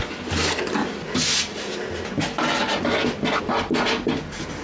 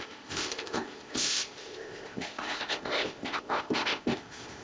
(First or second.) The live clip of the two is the first